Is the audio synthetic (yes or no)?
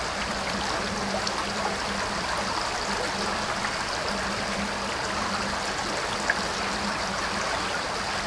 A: no